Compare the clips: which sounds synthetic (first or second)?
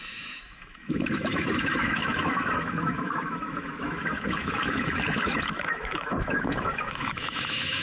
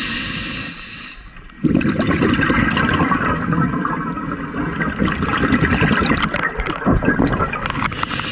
first